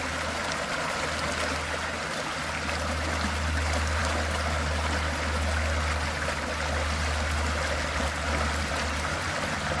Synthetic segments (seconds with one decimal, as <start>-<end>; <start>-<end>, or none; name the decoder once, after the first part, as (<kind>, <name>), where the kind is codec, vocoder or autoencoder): none